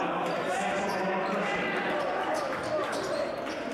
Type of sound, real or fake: real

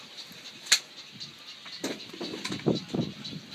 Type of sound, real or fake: real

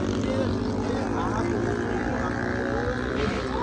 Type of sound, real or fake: real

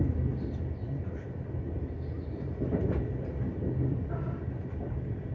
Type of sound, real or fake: real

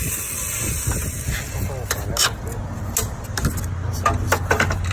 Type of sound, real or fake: real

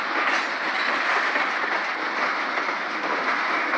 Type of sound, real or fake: real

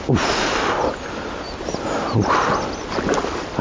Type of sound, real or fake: real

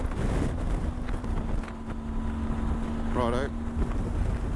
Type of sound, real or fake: real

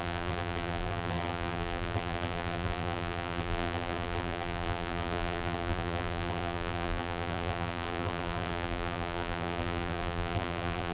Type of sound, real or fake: fake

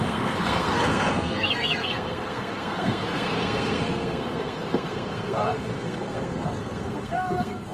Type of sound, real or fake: fake